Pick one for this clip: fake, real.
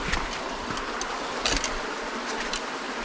real